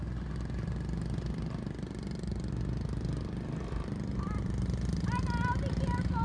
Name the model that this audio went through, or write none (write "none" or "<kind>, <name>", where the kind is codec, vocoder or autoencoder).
none